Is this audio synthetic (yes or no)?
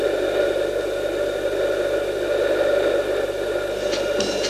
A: no